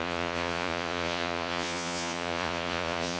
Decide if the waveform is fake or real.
fake